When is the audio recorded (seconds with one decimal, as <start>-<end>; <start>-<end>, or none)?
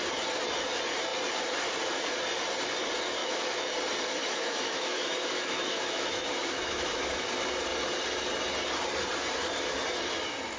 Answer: 0.0-3.2; 3.7-4.2; 7.3-10.6